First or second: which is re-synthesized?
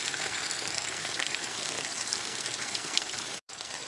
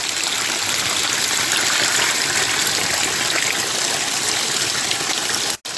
first